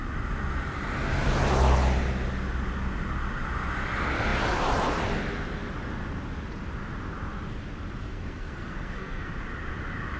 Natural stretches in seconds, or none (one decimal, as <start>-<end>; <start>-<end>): 0.0-8.0; 9.3-10.2

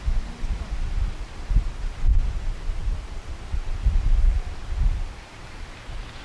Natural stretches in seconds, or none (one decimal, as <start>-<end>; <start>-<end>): 0.0-2.8; 5.4-6.2

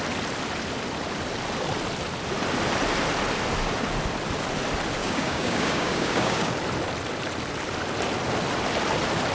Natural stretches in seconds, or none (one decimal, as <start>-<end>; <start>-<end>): 0.0-5.0; 6.5-9.3

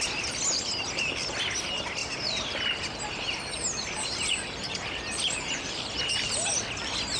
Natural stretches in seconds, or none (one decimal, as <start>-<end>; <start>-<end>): 0.0-7.2

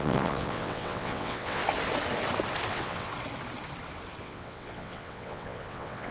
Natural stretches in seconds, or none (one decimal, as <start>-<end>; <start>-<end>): 1.6-2.7; 3.1-4.2

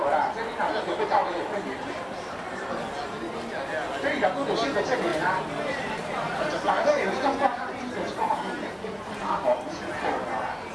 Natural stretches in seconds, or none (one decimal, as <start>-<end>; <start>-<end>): 0.0-1.2; 2.8-5.1; 9.9-10.7

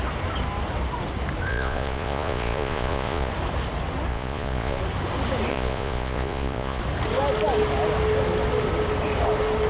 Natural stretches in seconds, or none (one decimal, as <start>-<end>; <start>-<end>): 0.0-1.5; 3.3-4.1; 4.8-5.5; 6.8-9.7